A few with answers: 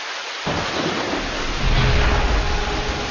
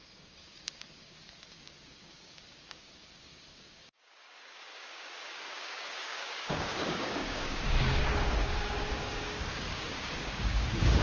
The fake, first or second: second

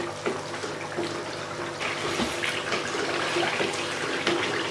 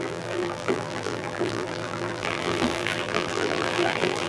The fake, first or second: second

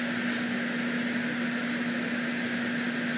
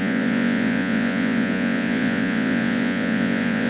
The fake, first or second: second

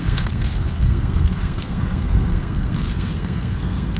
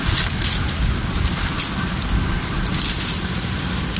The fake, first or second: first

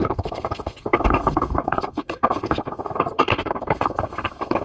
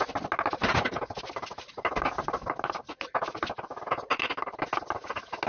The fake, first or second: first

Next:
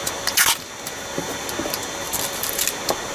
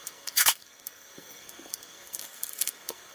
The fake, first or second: second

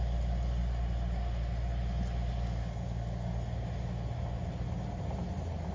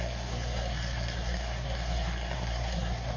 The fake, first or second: second